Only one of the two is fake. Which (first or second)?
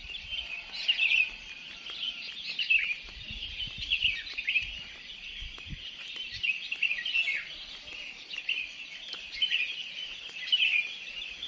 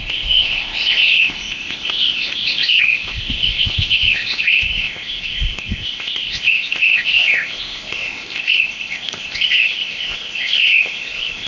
second